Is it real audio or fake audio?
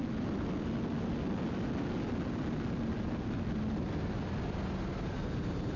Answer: real